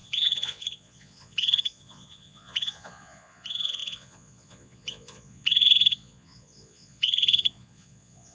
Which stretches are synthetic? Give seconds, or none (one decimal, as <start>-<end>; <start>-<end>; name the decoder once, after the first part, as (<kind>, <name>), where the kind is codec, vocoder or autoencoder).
0.0-8.3 (vocoder, Vocos)